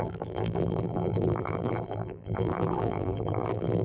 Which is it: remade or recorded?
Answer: remade